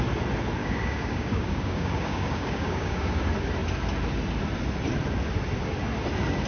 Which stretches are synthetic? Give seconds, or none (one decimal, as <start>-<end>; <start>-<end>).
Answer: 0.6-3.2